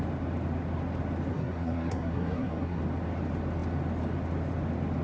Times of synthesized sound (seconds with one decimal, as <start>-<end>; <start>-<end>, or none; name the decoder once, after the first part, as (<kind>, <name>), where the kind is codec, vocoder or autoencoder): 1.3-2.8 (codec, SNAC)